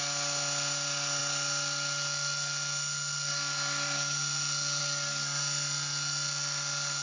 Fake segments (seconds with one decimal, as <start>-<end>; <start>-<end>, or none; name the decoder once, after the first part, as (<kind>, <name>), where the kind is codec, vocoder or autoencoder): none